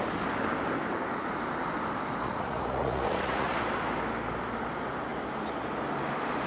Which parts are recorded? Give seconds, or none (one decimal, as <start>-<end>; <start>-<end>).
0.0-2.2; 3.6-6.5